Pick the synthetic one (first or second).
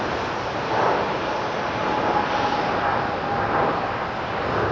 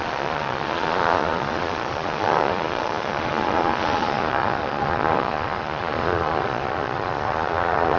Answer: second